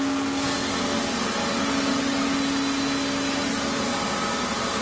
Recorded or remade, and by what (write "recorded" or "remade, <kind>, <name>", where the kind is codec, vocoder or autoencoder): recorded